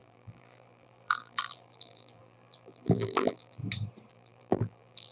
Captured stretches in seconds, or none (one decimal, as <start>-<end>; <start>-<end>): 3.6-4.1